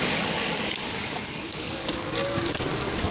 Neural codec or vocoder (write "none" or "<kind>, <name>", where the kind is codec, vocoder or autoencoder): codec, DAC